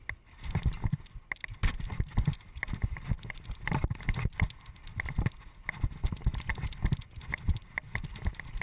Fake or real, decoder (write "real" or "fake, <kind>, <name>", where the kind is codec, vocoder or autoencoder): real